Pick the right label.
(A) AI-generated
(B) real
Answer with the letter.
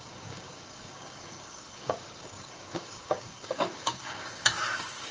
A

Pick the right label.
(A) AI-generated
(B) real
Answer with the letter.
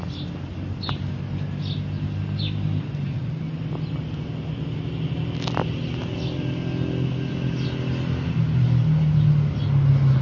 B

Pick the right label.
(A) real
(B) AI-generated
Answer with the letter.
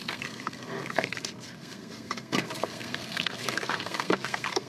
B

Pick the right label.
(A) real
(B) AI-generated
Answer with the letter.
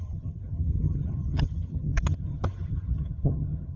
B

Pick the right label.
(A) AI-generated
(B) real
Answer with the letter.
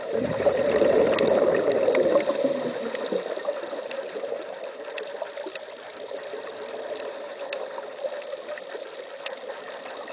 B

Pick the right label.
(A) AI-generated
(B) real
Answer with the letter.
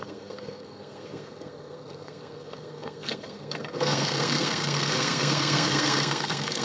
A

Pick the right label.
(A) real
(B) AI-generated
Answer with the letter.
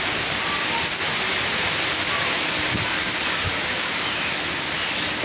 A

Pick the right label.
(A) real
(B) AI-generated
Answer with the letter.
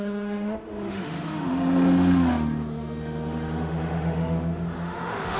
B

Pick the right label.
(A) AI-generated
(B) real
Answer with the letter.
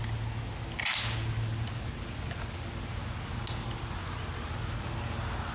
B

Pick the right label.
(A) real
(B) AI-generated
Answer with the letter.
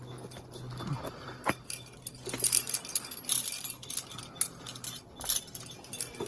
A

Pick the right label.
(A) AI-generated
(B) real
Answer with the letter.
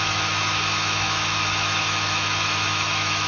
A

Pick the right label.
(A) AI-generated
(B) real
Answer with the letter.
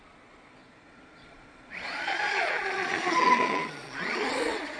A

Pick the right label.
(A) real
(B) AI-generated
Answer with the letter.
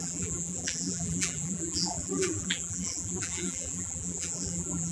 B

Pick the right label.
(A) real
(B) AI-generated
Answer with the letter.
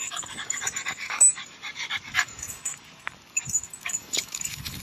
B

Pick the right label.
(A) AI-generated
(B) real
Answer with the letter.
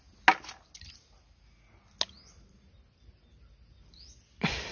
B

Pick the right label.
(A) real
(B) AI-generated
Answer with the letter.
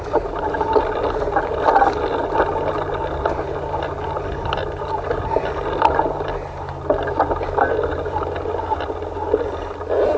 A